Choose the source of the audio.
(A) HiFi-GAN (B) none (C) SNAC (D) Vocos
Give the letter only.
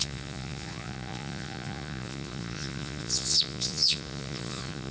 D